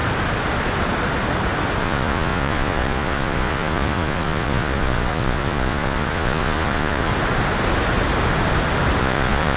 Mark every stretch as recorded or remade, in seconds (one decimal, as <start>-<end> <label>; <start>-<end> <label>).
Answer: 0.0-1.8 recorded; 1.8-7.1 remade; 7.1-9.0 recorded; 9.0-9.6 remade